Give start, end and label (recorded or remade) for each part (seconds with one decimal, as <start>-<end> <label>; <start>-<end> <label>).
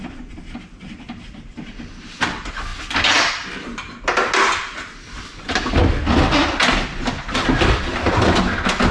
0.0-8.9 recorded